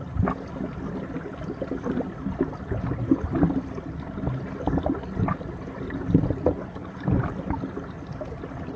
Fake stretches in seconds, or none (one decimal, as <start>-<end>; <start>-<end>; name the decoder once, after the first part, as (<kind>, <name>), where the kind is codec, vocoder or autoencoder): none